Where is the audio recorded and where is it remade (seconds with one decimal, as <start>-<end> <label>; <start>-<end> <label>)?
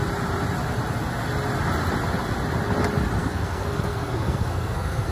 0.0-3.2 recorded; 3.2-5.1 remade